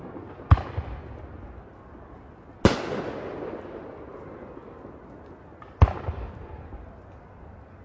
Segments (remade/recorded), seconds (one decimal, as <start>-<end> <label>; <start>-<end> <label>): 0.0-7.8 recorded